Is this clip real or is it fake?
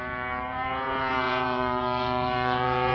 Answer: fake